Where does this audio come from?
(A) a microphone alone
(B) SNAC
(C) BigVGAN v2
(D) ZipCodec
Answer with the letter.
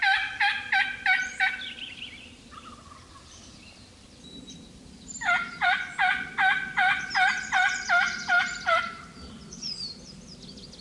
C